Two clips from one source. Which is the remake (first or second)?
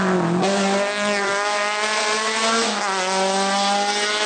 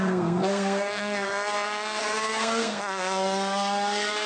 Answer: second